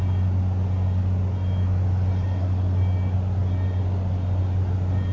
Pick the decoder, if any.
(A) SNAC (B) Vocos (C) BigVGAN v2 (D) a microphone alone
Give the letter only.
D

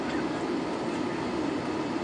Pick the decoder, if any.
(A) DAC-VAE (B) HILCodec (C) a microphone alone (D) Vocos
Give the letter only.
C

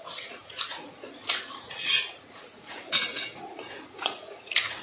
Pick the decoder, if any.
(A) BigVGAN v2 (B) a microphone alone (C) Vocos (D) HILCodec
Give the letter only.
C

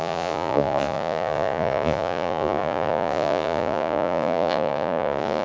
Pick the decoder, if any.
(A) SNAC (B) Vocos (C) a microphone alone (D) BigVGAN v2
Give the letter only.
B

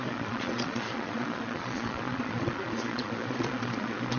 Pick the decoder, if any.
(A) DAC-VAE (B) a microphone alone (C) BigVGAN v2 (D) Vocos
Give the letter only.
D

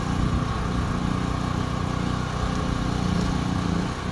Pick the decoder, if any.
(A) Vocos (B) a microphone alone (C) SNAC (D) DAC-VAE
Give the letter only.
B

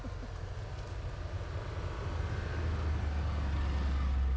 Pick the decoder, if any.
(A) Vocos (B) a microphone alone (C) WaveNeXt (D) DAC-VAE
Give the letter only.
B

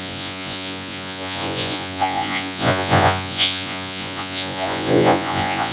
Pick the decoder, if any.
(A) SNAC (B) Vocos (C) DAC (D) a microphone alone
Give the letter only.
B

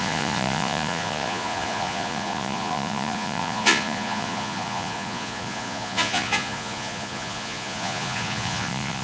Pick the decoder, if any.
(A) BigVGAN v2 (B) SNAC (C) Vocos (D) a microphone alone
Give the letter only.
C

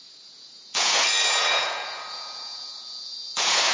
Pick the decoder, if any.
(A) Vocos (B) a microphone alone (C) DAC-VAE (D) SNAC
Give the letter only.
A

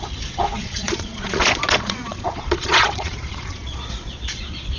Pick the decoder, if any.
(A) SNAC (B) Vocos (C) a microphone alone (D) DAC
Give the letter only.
B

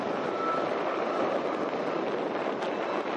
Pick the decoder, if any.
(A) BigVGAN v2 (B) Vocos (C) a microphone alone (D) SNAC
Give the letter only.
C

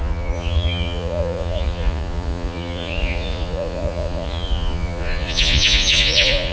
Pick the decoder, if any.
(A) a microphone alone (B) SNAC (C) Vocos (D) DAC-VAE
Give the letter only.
C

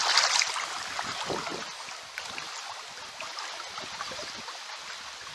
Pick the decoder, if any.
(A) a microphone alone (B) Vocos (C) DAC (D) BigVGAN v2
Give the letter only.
A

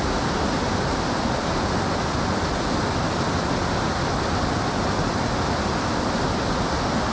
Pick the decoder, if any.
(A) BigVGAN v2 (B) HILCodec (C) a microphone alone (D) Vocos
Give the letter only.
C